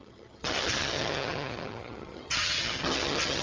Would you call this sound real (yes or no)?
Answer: no